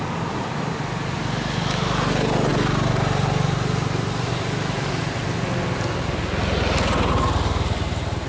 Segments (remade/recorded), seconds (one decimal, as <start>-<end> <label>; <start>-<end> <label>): 0.0-8.3 recorded